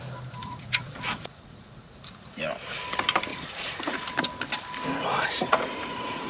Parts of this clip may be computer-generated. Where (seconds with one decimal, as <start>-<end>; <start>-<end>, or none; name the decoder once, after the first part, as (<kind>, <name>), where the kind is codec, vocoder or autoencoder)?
0.4-2.4 (vocoder, Vocos); 3.3-4.1; 5.0-6.3